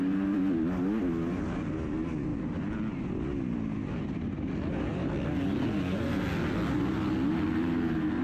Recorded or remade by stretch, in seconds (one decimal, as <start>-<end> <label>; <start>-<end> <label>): 0.0-8.2 recorded